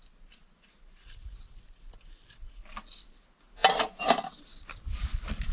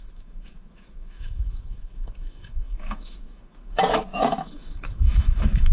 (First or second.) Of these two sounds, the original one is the first